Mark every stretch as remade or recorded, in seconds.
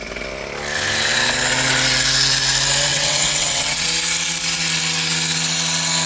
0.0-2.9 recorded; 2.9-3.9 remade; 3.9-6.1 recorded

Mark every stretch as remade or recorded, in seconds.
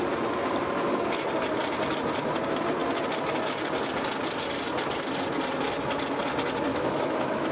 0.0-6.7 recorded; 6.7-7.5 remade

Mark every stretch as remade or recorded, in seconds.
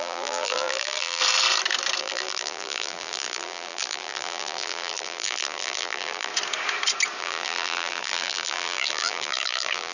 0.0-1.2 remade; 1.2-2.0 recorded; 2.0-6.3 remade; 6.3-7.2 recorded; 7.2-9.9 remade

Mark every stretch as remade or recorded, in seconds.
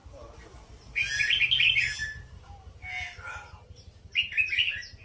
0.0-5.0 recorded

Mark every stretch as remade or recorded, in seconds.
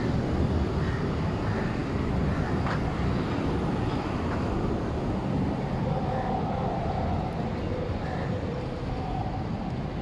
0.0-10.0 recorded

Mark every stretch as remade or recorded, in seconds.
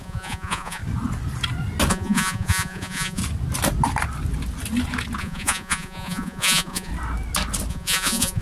0.0-0.8 remade; 0.8-1.9 recorded; 1.9-3.2 remade; 3.2-5.2 recorded; 5.2-6.9 remade; 6.9-7.7 recorded; 7.7-8.4 remade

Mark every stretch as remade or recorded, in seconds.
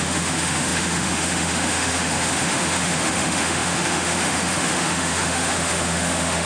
0.0-6.5 remade